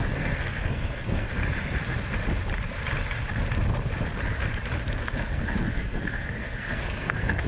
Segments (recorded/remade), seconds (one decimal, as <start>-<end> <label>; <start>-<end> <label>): 0.0-1.4 remade; 1.4-5.0 recorded; 5.0-7.5 remade